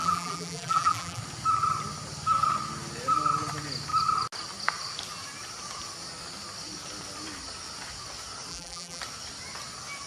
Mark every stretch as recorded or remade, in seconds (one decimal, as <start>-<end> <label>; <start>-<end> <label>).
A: 0.0-1.2 remade; 1.2-8.5 recorded; 8.5-9.0 remade; 9.0-10.1 recorded